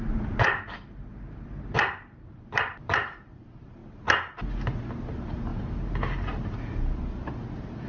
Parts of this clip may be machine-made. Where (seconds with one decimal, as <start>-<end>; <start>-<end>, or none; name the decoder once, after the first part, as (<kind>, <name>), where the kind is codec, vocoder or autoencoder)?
0.0-3.8 (vocoder, BigVGAN v2); 5.1-7.9